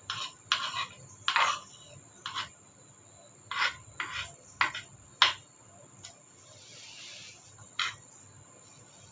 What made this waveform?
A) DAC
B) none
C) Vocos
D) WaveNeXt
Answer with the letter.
B